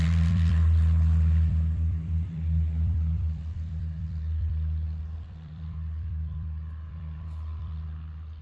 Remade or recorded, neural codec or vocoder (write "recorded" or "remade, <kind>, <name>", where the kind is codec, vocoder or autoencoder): remade, vocoder, BigVGAN v2